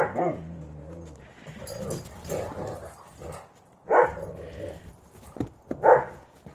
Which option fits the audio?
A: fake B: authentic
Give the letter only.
B